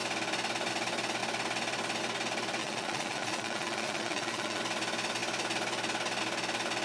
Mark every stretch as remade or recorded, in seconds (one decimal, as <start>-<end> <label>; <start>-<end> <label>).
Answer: 0.0-2.6 recorded; 2.6-4.6 remade; 4.6-6.8 recorded